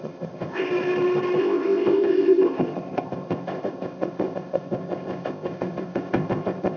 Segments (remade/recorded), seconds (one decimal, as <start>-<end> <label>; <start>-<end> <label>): 0.0-0.7 remade; 0.7-1.4 recorded; 1.4-6.8 remade